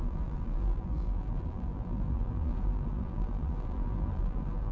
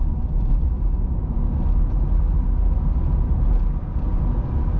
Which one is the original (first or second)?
second